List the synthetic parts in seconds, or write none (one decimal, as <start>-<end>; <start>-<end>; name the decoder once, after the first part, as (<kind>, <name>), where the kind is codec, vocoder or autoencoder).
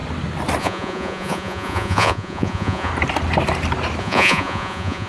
0.6-2.9 (vocoder, Vocos); 4.0-5.1